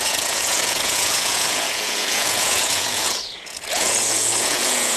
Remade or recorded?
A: remade